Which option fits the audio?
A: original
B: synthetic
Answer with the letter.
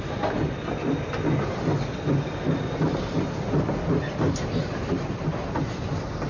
A